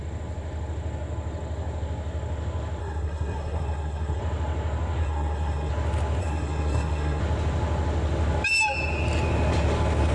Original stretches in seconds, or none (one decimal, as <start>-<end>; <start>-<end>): 0.0-2.8; 4.2-5.0; 5.7-6.2; 7.2-10.1